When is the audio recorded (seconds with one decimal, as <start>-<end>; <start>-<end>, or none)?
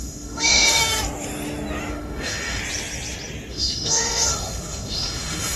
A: 0.8-1.9; 2.6-3.5